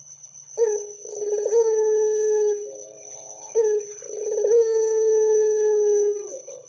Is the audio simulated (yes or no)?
yes